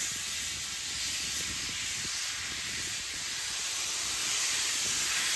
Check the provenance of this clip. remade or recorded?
recorded